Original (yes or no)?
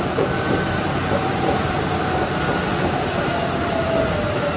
yes